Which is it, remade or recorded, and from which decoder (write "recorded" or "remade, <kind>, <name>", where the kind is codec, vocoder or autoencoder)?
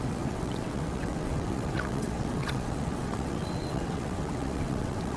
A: remade, vocoder, WaveNeXt